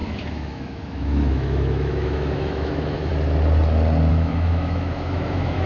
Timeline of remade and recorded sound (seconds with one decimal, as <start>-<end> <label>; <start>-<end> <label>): 0.0-3.1 remade; 3.1-4.1 recorded; 4.1-5.7 remade